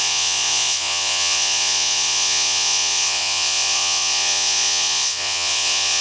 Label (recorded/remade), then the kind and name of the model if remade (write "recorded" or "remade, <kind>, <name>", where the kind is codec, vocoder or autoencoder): remade, vocoder, Vocos